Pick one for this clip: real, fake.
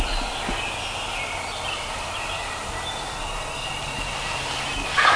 real